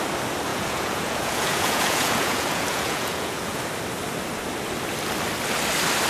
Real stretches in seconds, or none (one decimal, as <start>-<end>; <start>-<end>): 0.0-0.5; 3.6-6.1